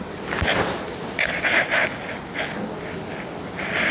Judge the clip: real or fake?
real